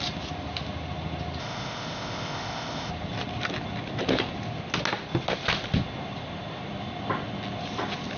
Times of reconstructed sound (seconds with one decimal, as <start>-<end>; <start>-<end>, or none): 1.4-2.9